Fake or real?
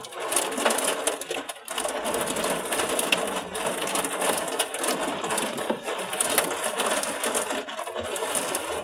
real